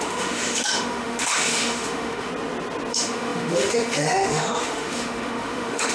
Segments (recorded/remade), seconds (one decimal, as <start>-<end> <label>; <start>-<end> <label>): 0.0-2.3 remade; 2.3-2.9 recorded; 2.9-5.9 remade